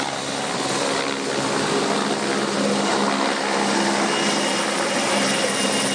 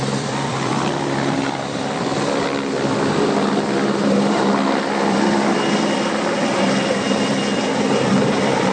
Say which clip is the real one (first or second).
first